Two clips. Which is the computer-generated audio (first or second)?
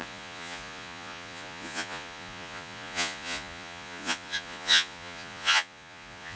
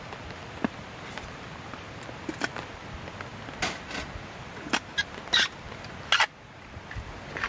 first